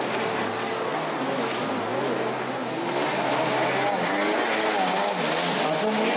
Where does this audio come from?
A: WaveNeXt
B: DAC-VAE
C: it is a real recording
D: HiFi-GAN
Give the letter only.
C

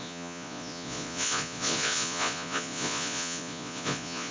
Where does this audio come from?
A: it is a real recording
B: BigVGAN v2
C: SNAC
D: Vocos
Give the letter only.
D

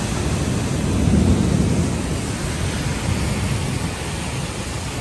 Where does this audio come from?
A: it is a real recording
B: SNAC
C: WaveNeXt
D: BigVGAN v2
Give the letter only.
A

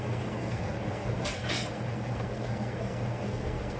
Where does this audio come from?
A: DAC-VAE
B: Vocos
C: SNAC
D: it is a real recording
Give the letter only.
C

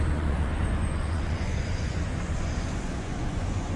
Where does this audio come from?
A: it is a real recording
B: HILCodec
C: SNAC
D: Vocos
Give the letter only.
D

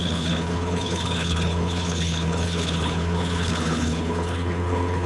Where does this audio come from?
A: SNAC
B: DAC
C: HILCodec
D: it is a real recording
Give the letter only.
C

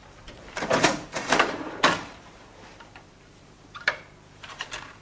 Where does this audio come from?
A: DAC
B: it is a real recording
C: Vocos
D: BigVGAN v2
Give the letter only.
D